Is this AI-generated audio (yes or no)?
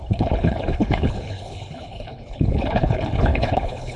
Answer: yes